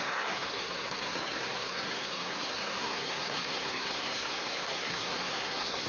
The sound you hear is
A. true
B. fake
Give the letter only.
B